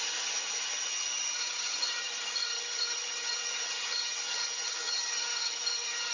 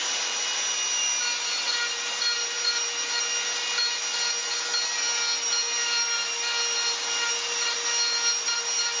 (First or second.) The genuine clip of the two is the second